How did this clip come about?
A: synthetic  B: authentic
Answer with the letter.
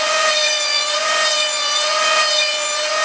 A